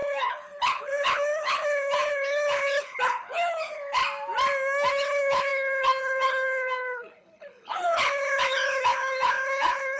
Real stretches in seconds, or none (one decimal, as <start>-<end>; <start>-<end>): 4.0-4.9